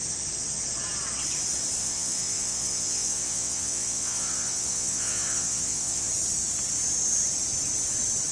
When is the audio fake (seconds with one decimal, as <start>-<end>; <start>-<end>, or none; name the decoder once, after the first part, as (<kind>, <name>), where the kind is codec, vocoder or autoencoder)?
1.8-6.1 (vocoder, Vocos)